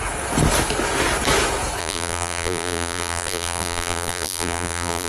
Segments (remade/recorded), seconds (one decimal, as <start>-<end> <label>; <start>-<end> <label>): 0.0-1.8 recorded; 1.8-5.1 remade